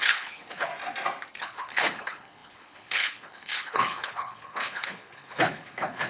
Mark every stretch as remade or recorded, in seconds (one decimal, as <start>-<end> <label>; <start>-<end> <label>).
0.0-0.7 remade; 0.7-1.3 recorded; 1.3-6.1 remade